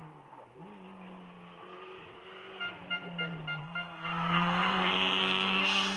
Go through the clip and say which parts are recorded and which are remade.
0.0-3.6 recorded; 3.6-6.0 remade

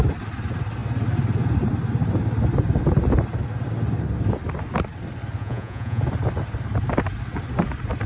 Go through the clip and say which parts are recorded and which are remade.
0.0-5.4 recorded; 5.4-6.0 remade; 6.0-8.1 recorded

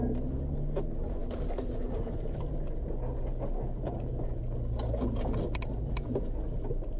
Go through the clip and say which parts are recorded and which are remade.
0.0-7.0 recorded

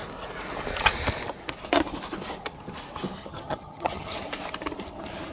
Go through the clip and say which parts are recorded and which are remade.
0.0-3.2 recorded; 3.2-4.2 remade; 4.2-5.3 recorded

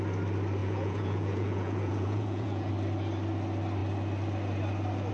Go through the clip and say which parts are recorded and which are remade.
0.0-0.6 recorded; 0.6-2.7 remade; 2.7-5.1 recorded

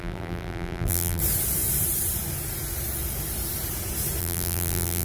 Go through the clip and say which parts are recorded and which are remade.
0.0-1.2 remade; 1.2-4.2 recorded; 4.2-5.0 remade